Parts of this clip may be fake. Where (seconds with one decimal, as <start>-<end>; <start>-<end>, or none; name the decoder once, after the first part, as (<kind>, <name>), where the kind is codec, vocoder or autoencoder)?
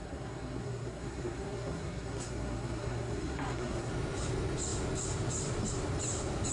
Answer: 0.0-3.9 (codec, SNAC)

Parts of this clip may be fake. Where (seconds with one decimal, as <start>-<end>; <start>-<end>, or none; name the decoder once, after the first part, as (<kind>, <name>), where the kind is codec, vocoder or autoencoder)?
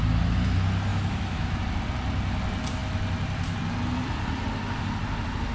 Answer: 0.9-1.6 (autoencoder, DAC-VAE)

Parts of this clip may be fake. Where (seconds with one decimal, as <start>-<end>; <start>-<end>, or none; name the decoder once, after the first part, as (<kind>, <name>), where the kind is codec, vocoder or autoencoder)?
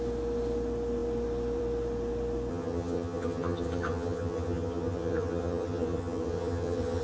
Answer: 2.5-7.0 (vocoder, HiFi-GAN)